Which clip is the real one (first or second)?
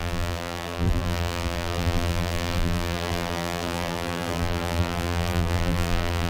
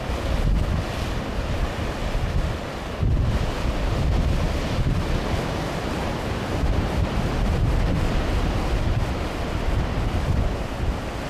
second